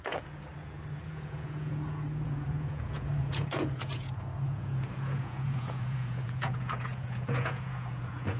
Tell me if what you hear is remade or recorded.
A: remade